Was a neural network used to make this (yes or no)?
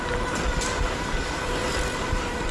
no